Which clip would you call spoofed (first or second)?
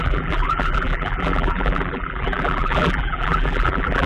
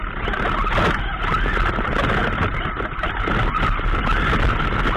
first